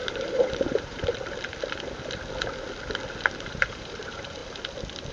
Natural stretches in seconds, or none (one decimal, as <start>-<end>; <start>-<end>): 1.1-3.5; 4.4-5.1